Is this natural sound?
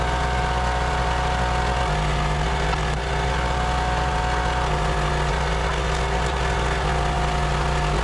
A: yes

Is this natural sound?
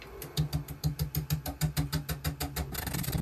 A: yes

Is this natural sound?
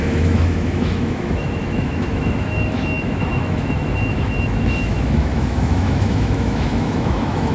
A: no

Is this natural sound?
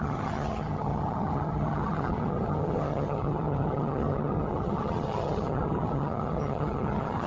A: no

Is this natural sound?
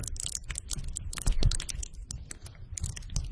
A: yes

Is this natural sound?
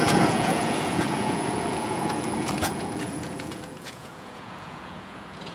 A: no